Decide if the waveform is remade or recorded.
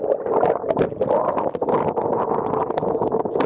recorded